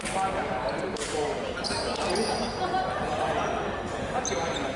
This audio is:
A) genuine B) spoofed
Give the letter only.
A